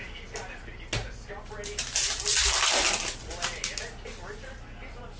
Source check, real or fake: real